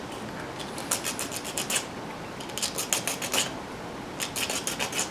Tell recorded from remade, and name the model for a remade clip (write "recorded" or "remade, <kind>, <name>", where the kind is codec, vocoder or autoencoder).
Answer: recorded